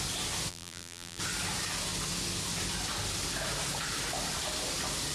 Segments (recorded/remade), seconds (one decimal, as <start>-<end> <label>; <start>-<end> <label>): 0.0-0.5 recorded; 0.5-1.2 remade; 1.2-5.1 recorded